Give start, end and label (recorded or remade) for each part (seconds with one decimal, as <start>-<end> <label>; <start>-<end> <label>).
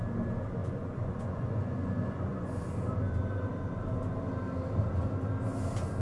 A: 0.0-0.6 recorded; 0.6-2.6 remade; 2.6-6.0 recorded